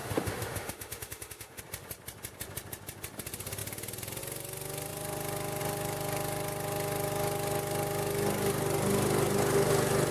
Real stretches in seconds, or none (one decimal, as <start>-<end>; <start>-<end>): 1.6-10.1

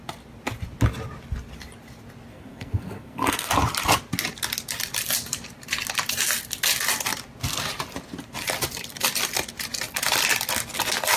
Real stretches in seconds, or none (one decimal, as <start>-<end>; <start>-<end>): 0.0-2.3; 3.5-11.2

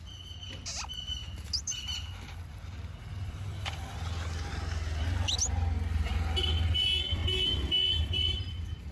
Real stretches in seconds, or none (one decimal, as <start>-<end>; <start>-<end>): 0.0-8.9